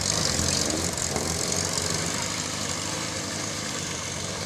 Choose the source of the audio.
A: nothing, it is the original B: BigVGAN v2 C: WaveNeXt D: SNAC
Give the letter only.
B